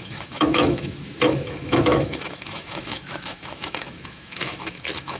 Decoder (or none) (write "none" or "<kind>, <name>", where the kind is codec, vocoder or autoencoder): autoencoder, DAC-VAE